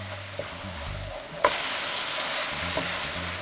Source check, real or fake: real